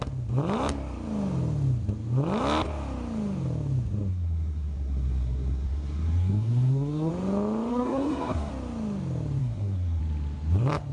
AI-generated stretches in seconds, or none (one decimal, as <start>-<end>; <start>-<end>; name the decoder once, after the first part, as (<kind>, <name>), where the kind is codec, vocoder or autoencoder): 4.1-7.1 (codec, SNAC); 7.7-8.5; 9.4-10.0